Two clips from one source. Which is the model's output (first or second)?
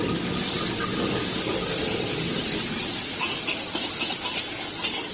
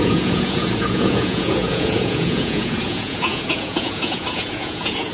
second